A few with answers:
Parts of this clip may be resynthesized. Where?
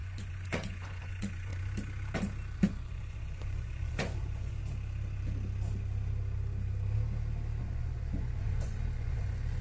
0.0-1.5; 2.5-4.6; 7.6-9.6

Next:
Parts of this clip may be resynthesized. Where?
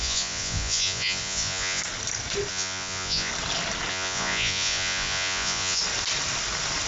0.0-1.8; 2.5-3.3; 3.9-5.8